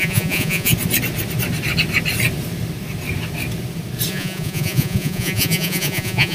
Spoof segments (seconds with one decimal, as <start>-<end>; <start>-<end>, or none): 0.0-0.7; 4.1-6.3